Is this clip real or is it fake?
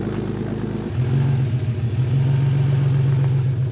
real